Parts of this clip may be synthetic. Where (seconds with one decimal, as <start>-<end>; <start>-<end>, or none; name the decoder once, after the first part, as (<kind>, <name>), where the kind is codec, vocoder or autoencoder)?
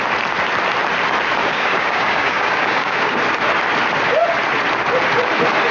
1.4-3.2 (codec, DAC)